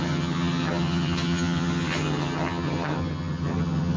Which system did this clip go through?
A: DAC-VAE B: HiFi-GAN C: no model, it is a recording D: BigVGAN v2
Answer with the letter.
B